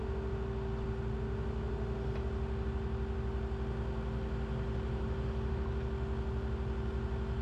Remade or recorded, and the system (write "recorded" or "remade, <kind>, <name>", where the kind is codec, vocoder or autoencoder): recorded